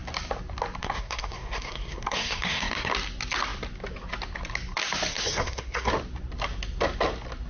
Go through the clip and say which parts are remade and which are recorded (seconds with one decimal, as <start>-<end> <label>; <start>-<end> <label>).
0.0-0.8 recorded; 0.8-2.9 remade; 2.9-5.1 recorded; 5.1-5.9 remade; 5.9-7.5 recorded